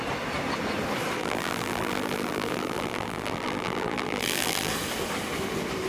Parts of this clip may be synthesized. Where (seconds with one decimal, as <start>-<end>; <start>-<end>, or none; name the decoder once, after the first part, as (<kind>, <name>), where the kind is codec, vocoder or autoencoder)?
1.2-4.7 (vocoder, BigVGAN v2)